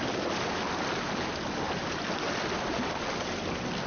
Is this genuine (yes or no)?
yes